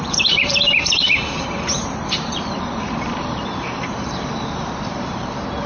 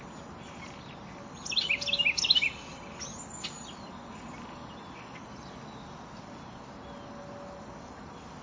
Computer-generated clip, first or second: first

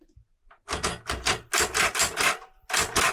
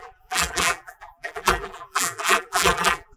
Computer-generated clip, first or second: second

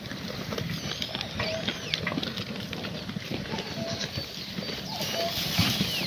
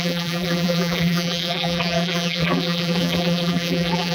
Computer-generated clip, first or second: second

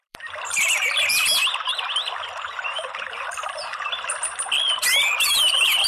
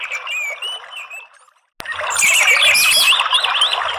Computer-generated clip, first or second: first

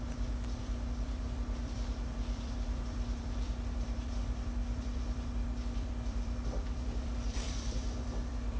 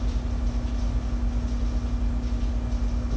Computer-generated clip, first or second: first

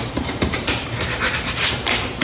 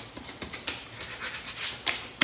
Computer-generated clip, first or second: first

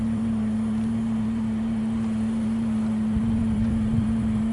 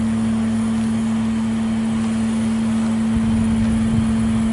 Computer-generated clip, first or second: first